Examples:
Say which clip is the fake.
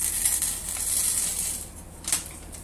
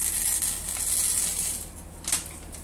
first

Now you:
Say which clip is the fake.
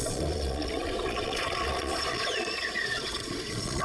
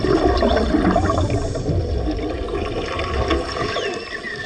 first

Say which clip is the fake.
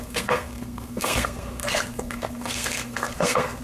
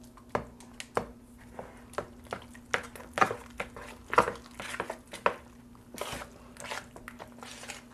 first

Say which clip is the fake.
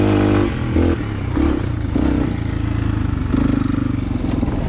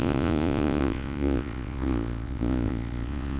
second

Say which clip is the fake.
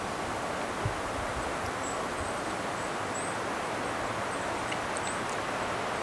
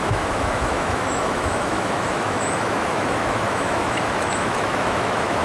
second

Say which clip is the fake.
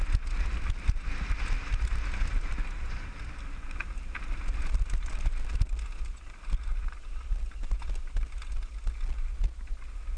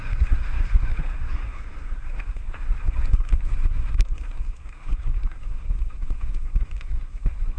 second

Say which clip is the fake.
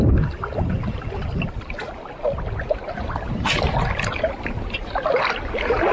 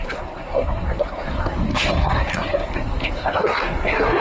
second